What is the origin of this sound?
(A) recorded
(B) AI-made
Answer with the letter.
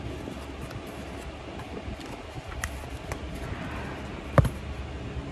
A